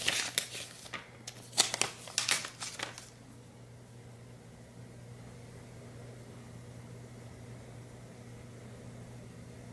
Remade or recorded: recorded